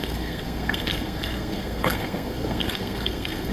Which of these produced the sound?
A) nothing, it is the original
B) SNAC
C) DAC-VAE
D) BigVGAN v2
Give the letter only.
B